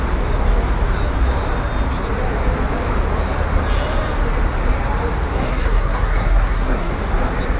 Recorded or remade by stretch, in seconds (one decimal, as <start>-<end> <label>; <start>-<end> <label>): 0.0-5.3 recorded; 5.3-6.9 remade; 6.9-7.6 recorded